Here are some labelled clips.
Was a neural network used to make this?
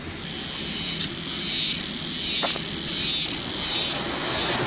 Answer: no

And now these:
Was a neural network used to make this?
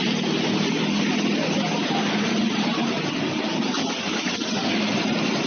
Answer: no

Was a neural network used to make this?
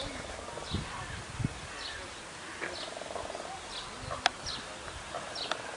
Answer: no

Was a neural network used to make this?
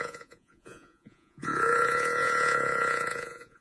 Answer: yes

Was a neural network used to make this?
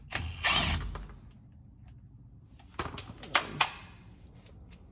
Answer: no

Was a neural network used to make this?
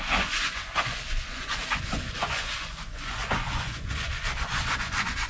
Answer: yes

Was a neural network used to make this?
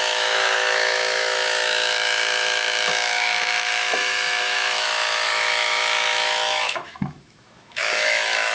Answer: yes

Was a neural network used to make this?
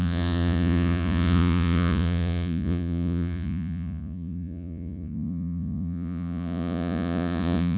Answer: yes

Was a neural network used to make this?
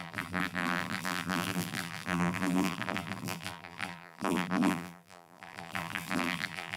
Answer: yes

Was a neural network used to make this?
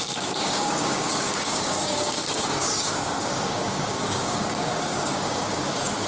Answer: yes